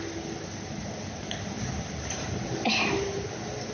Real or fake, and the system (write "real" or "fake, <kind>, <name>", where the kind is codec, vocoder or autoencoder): real